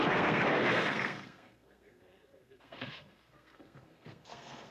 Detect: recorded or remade remade